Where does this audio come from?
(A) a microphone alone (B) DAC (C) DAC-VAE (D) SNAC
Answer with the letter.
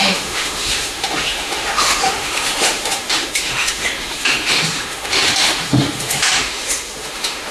C